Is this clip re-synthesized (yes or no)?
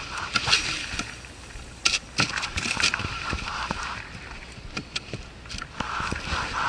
yes